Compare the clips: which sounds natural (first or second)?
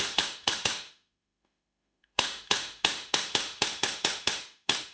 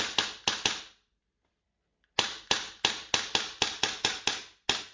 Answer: second